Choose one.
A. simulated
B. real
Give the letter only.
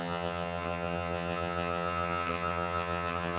A